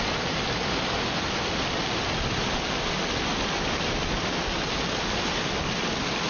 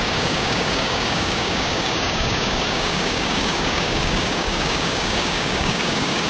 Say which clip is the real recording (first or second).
first